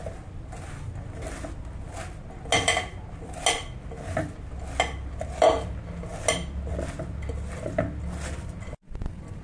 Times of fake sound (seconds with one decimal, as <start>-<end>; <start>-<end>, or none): none